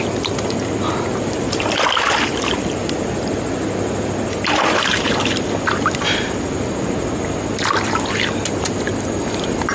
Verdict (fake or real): real